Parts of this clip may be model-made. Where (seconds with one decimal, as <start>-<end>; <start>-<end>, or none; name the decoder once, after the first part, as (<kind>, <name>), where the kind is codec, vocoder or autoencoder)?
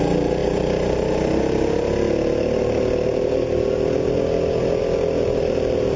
none